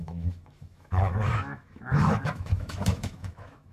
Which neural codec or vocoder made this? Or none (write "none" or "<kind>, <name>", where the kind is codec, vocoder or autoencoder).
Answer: autoencoder, DAC-VAE